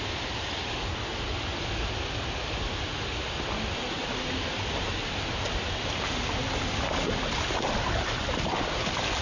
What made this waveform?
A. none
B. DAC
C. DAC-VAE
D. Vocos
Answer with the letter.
A